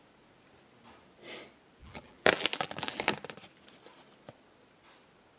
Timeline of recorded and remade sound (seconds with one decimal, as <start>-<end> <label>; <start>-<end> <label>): 0.0-1.8 recorded; 1.8-3.0 remade; 3.0-5.4 recorded